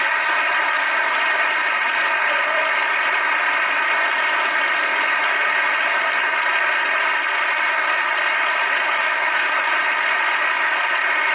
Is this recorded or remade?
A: recorded